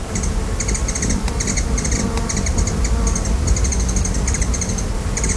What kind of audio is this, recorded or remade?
recorded